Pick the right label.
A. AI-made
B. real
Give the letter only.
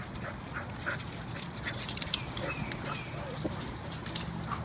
B